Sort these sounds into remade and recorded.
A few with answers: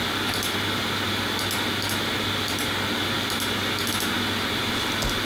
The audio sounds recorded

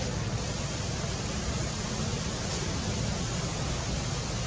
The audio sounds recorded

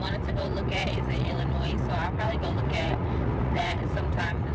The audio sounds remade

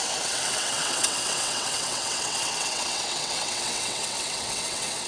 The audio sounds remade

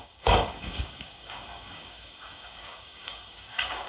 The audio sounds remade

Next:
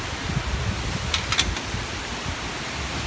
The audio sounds recorded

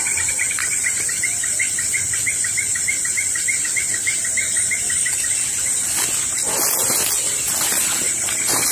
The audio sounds recorded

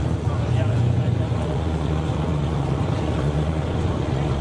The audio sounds remade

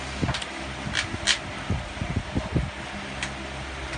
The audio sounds recorded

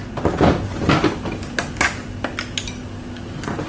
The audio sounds recorded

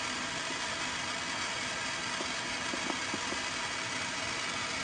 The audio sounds recorded